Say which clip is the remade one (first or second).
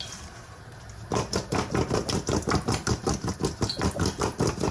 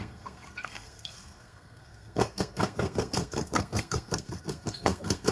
second